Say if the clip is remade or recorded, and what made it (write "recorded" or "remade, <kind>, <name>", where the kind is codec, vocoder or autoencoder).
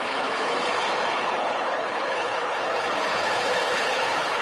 remade, codec, HILCodec